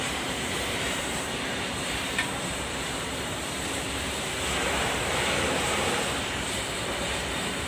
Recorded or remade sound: remade